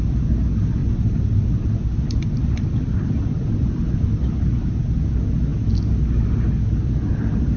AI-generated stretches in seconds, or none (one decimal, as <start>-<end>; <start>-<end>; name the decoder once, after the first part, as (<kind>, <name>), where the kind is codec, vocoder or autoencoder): none